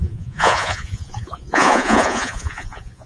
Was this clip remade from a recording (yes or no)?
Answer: yes